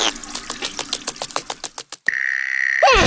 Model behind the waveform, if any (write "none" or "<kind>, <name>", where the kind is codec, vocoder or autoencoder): none